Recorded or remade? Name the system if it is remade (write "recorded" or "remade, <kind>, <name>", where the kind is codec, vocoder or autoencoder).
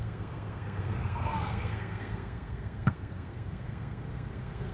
remade, codec, SNAC